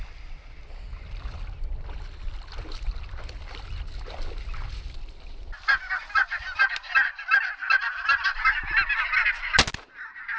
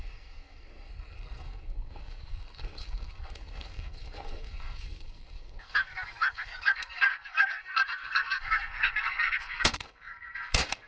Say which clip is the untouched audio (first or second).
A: first